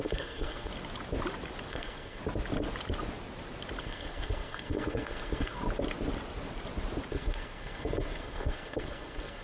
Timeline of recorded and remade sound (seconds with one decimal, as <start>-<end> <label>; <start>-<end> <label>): 0.0-0.7 remade; 0.7-1.7 recorded; 1.7-2.2 remade; 2.2-3.8 recorded; 3.8-5.6 remade; 5.6-7.1 recorded; 7.1-9.4 remade

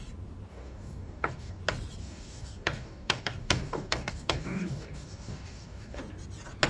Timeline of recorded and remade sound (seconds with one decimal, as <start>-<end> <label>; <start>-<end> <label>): 0.0-0.5 recorded; 0.5-1.6 remade; 1.6-2.0 recorded; 2.0-6.0 remade; 6.0-6.7 recorded

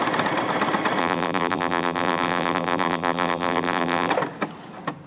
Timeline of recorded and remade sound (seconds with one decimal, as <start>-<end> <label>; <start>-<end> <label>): 0.0-1.0 recorded; 1.0-4.1 remade; 4.1-5.1 recorded

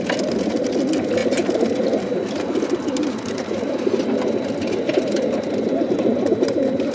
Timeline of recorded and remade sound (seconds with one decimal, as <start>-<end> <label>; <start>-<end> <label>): 0.0-6.9 recorded

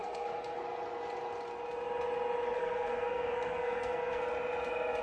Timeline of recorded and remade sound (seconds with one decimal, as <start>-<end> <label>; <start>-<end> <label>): 0.0-0.6 remade; 0.6-2.6 recorded; 2.6-4.2 remade; 4.2-5.0 recorded